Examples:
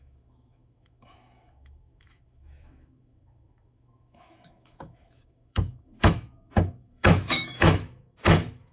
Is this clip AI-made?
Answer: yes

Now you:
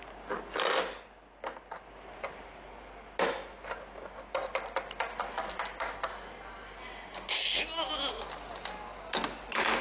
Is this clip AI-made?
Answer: no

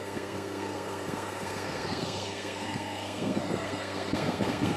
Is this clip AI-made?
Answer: yes